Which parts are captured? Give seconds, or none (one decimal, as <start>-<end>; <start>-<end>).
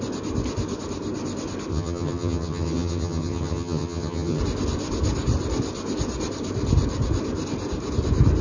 0.0-1.7; 4.4-8.4